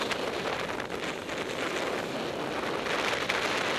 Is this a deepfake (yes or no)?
no